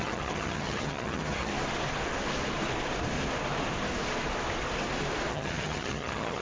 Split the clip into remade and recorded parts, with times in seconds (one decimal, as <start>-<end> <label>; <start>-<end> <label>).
0.0-1.5 remade; 1.5-5.3 recorded; 5.3-6.4 remade